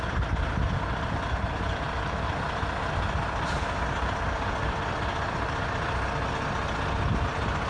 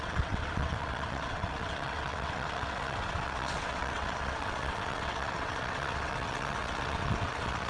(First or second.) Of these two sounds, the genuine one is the first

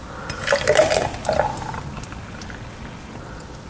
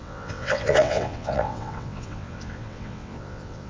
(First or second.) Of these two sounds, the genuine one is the first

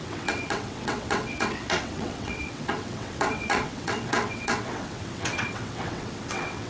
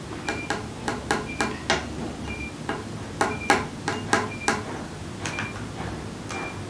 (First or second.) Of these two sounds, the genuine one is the second